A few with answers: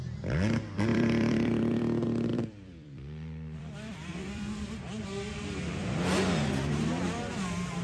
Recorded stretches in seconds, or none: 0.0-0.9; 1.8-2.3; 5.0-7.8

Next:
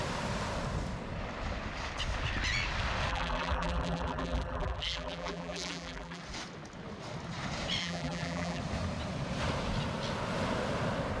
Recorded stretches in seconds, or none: 0.0-3.1; 6.2-7.8; 8.6-11.2

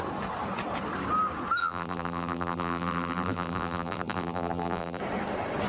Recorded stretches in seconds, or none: 0.0-1.6; 5.0-5.7

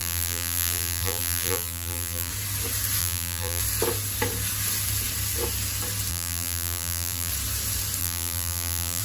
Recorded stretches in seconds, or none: 2.3-3.0; 3.6-6.1; 7.3-8.0

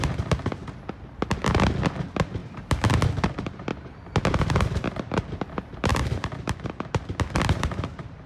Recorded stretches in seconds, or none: 0.6-2.0

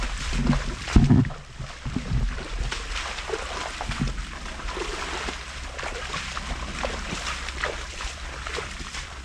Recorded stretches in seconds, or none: 2.5-6.1

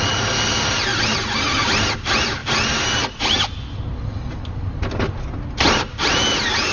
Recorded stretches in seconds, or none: 0.0-6.7